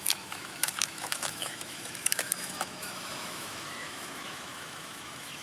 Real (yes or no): no